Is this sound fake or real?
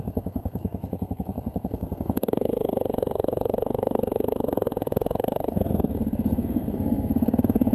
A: fake